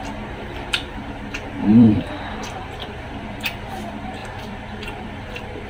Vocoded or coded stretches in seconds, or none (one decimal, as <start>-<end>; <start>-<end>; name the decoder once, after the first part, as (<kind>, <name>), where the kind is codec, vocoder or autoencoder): 0.0-5.7 (vocoder, BigVGAN v2)